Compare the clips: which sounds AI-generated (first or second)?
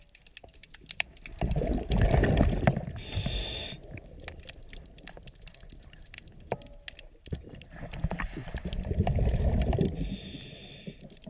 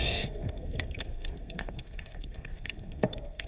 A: second